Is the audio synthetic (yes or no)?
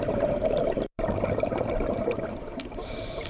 yes